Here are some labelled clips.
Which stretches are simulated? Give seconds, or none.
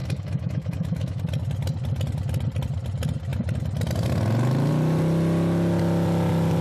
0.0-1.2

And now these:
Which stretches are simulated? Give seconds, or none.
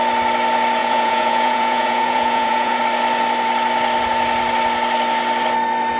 0.8-2.8